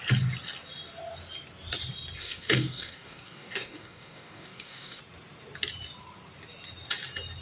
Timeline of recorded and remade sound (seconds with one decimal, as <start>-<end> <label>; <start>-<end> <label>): 0.0-2.2 recorded; 2.2-5.0 remade; 5.0-7.4 recorded